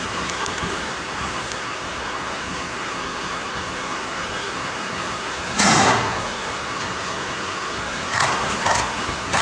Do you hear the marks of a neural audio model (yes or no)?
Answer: yes